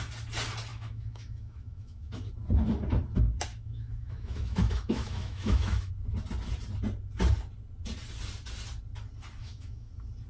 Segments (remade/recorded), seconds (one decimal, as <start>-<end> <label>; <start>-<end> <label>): 0.0-0.7 recorded; 0.7-2.3 remade; 2.3-3.5 recorded; 3.5-5.9 remade; 5.9-9.4 recorded; 9.4-9.9 remade; 9.9-10.3 recorded